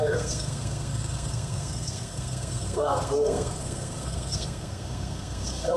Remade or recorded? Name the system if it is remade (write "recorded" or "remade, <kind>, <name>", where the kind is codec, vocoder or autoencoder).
remade, codec, SNAC